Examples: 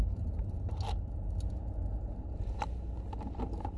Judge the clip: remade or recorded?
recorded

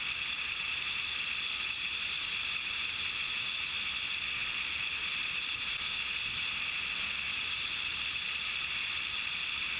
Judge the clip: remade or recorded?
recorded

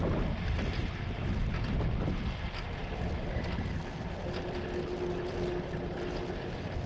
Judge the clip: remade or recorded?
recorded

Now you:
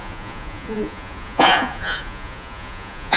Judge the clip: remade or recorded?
remade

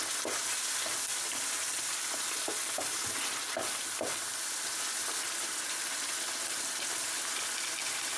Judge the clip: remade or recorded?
recorded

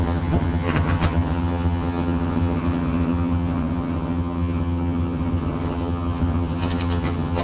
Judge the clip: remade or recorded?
remade